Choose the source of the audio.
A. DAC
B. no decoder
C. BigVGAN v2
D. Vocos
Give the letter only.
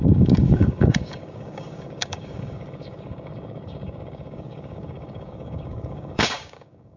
A